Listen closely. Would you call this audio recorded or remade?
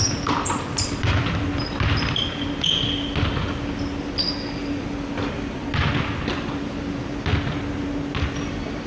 recorded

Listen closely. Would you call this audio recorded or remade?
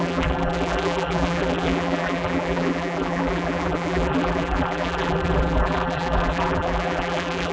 remade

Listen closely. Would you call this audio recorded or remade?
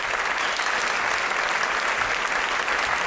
recorded